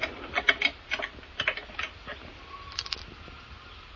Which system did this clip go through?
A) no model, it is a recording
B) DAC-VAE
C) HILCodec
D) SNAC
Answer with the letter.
A